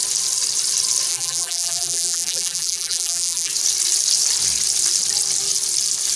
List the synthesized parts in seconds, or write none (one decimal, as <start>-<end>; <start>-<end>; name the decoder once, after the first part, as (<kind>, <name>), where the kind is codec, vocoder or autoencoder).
1.1-3.5 (vocoder, BigVGAN v2)